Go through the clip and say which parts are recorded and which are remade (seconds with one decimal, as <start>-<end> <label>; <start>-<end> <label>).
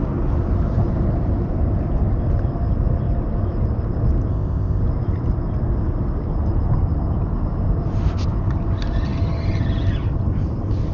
0.0-4.3 recorded; 4.3-4.8 remade; 4.8-10.9 recorded